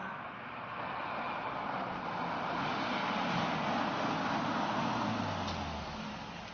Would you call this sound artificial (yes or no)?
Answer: no